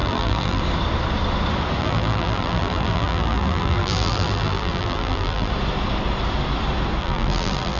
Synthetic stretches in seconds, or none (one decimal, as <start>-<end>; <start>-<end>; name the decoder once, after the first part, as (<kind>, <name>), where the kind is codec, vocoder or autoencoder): 0.0-0.6 (vocoder, BigVGAN v2); 1.8-5.5; 7.0-7.8